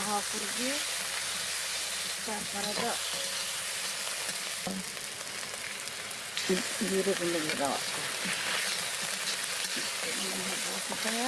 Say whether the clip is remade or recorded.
recorded